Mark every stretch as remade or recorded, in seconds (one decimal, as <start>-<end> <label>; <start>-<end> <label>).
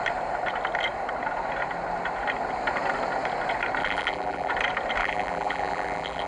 0.0-3.8 recorded; 3.8-4.5 remade; 4.5-5.0 recorded; 5.0-6.3 remade